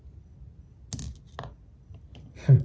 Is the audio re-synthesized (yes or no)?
no